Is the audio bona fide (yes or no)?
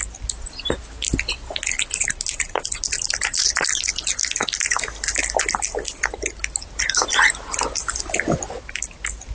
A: yes